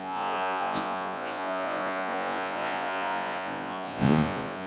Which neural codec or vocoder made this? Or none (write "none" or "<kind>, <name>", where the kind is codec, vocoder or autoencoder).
vocoder, Vocos